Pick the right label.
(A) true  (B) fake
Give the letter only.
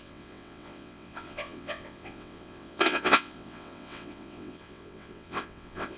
B